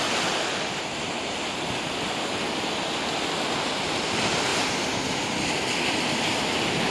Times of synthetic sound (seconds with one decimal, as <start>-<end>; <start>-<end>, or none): 4.5-6.4